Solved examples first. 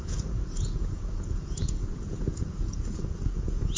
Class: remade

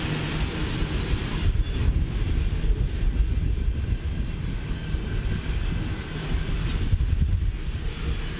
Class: recorded